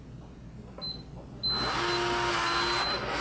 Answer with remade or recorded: recorded